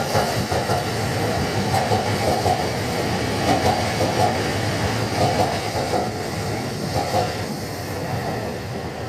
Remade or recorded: recorded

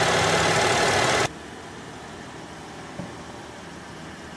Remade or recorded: recorded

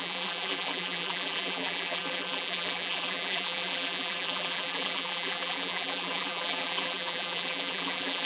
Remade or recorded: remade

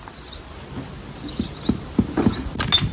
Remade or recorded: recorded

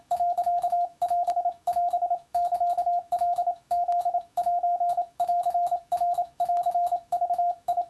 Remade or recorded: remade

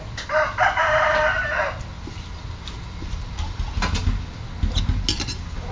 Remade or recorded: recorded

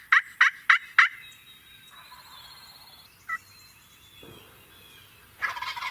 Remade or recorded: recorded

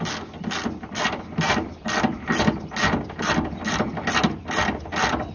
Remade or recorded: recorded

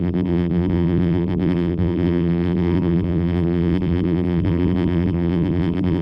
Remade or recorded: remade